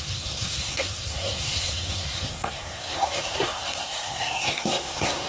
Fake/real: fake